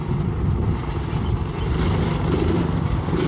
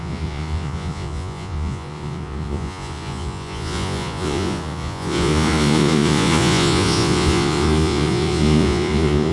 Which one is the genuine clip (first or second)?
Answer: first